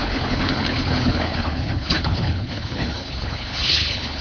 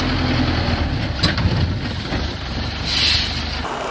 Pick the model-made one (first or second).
first